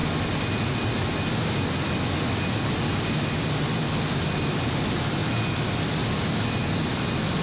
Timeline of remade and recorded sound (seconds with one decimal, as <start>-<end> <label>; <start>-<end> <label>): 0.0-7.4 recorded